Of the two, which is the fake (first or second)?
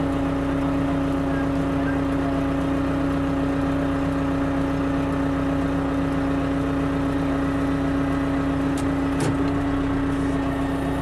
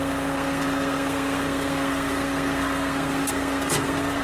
second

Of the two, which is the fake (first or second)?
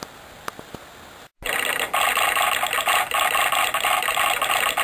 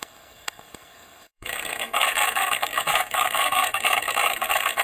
second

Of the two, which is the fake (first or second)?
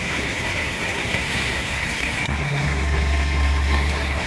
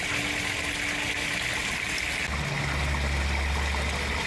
first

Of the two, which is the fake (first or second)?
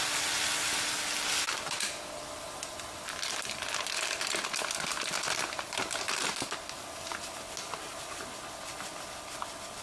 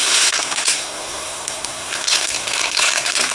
second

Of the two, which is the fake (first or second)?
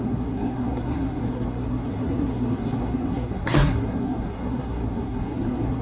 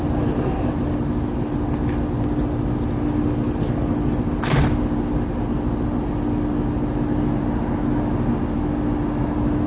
first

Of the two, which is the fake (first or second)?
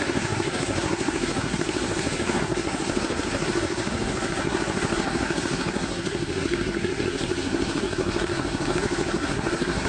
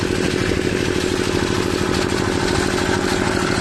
first